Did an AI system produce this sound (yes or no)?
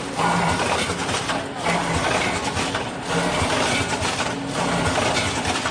no